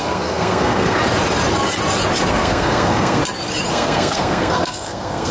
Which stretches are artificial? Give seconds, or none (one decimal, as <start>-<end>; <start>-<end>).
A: 0.0-1.0; 2.3-3.2; 3.7-5.3

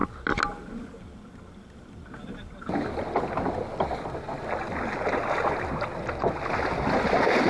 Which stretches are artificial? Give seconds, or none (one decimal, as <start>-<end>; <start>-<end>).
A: none

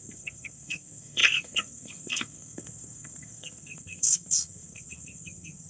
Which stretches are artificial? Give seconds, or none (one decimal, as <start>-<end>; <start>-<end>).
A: 0.0-5.7

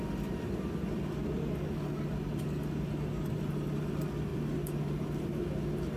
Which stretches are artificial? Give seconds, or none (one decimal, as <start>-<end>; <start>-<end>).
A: none

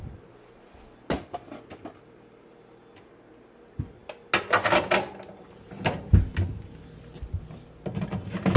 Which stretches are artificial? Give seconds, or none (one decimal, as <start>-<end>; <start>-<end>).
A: none

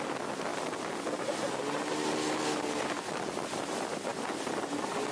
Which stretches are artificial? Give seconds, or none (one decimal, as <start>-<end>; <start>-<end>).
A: none